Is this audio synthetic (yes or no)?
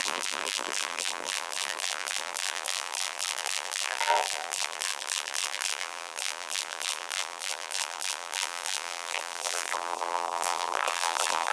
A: yes